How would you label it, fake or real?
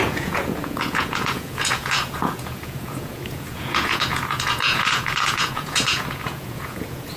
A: fake